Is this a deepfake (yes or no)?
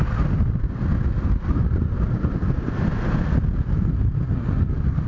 no